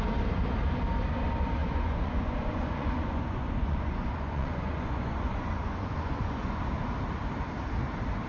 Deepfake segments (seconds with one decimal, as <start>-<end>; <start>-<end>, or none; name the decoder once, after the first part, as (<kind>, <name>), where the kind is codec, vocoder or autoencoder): 1.6-6.6 (vocoder, Vocos)